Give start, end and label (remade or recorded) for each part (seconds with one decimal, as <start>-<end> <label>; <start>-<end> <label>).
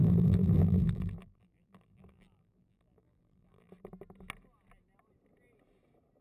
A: 0.0-3.7 remade; 3.7-6.2 recorded